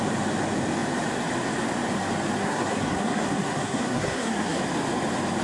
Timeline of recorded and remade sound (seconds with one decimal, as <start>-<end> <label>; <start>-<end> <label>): 0.0-2.4 recorded; 2.4-4.6 remade; 4.6-5.4 recorded